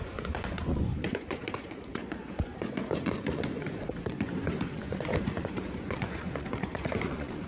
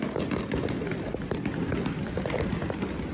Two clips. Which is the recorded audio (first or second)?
second